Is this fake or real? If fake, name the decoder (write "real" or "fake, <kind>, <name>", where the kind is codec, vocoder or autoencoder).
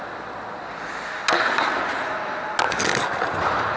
real